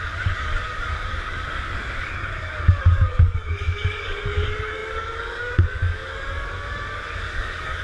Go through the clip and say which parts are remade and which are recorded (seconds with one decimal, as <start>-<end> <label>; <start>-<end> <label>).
0.0-7.8 remade